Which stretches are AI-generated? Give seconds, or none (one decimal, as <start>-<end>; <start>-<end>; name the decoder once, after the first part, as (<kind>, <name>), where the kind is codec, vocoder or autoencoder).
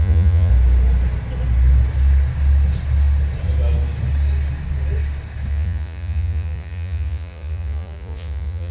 0.0-0.5 (vocoder, Vocos); 5.5-8.7